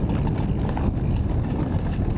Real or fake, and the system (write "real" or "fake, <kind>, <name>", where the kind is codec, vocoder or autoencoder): real